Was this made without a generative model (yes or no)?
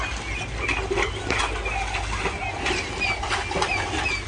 yes